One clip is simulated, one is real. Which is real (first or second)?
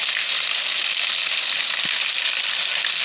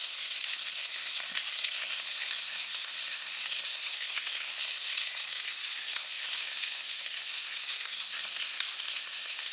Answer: first